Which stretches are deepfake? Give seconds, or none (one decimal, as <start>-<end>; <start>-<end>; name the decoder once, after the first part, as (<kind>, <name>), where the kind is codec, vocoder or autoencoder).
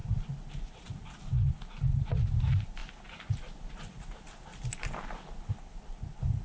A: none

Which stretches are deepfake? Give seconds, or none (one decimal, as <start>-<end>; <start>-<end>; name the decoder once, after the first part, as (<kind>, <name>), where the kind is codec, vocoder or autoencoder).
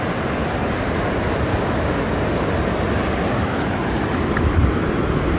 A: 1.5-2.0 (codec, DAC)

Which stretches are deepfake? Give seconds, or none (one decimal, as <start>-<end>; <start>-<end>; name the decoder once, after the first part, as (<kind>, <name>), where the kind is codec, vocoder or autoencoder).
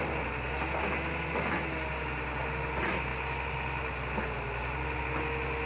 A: none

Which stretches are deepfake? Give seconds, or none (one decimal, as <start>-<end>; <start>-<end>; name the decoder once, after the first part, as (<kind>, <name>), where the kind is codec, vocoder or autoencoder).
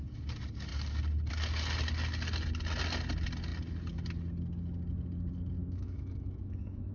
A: 5.6-6.9 (autoencoder, DAC-VAE)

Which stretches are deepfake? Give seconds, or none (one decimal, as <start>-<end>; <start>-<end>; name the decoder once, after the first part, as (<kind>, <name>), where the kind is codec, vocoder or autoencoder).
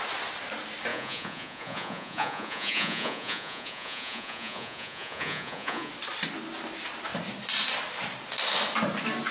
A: 0.9-5.9 (vocoder, Vocos)